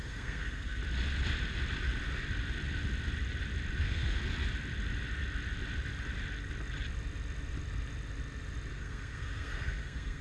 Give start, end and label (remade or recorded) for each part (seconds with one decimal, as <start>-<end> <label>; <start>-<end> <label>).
0.0-0.8 remade; 0.8-3.8 recorded; 3.8-4.2 remade; 4.2-8.7 recorded; 8.7-10.2 remade